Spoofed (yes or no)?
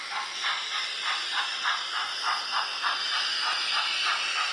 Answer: no